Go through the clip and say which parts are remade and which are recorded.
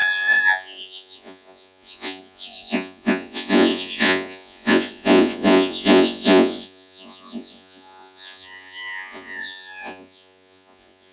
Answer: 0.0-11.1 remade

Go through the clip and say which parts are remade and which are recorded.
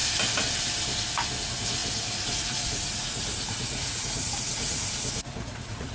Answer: 0.0-1.4 recorded; 1.4-5.9 remade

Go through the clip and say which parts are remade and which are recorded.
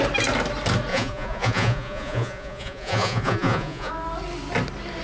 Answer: 0.0-0.9 recorded; 0.9-3.9 remade; 3.9-5.0 recorded